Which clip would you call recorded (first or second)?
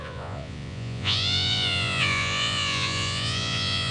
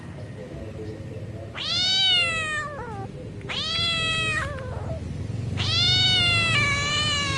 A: second